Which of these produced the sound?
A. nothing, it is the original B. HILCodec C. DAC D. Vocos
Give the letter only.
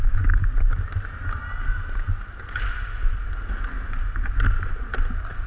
A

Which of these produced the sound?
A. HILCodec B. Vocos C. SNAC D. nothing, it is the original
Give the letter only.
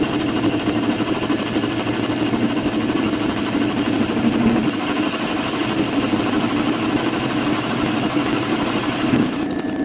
D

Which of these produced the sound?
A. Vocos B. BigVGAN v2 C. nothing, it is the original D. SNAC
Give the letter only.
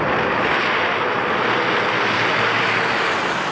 C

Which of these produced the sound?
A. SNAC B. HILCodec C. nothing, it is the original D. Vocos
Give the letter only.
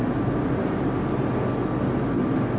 C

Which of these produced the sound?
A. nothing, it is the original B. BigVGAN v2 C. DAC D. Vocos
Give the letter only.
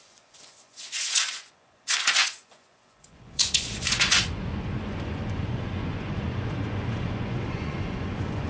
D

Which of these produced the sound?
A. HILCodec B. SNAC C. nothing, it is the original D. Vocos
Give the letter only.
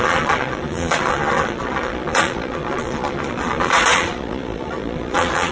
D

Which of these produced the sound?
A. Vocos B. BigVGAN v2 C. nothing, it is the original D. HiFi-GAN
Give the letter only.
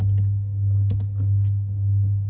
C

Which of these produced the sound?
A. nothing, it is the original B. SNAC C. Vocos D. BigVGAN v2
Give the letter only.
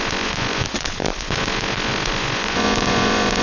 C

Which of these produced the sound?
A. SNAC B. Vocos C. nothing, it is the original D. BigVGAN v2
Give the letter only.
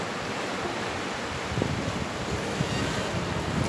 C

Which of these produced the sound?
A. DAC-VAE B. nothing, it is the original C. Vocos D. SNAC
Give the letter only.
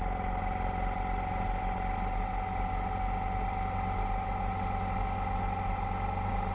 B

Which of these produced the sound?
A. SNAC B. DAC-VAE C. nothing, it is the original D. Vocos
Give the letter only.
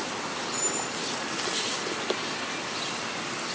C